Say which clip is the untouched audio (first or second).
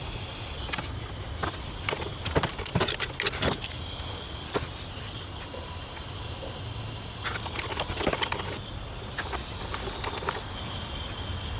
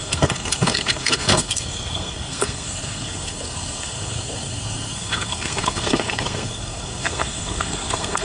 first